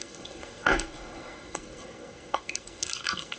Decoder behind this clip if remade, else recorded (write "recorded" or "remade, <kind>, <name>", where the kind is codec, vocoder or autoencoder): remade, codec, SNAC